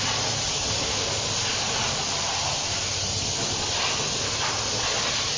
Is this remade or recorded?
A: recorded